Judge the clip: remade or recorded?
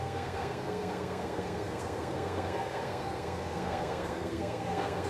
remade